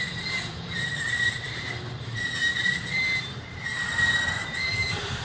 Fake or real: fake